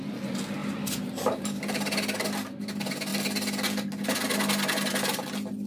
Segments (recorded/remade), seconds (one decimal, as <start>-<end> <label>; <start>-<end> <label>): 0.0-0.6 recorded; 0.6-1.6 remade; 1.6-5.7 recorded